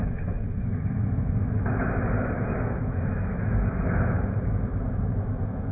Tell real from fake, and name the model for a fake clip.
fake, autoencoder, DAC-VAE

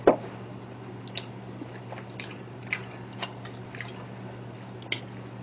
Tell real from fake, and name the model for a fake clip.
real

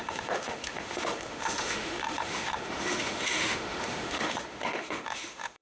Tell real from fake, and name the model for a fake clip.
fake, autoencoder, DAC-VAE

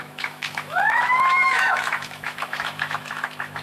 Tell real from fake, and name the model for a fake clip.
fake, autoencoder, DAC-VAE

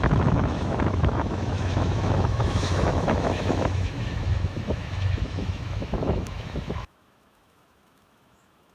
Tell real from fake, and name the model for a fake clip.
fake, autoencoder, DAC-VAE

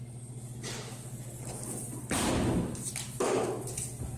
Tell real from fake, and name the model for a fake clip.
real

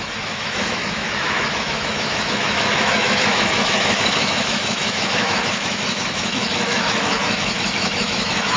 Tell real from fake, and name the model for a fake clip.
fake, autoencoder, DAC-VAE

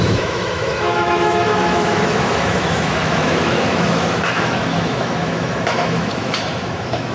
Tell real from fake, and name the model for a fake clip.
fake, autoencoder, DAC-VAE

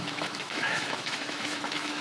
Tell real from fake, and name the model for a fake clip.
fake, autoencoder, DAC-VAE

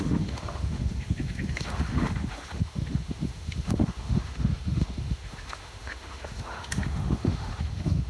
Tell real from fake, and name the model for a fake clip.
fake, autoencoder, DAC-VAE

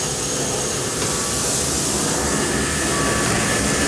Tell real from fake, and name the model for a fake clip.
real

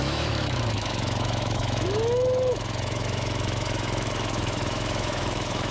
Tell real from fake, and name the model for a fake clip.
fake, autoencoder, DAC-VAE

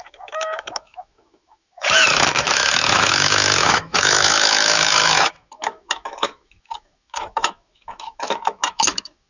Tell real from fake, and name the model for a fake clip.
fake, autoencoder, DAC-VAE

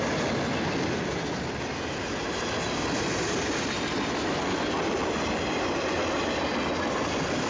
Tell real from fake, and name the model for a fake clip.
real